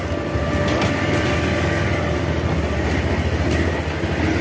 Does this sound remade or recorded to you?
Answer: recorded